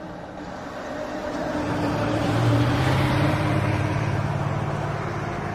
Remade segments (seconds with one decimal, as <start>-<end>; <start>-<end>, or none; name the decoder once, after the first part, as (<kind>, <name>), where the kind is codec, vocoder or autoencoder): 1.4-4.5 (vocoder, BigVGAN v2)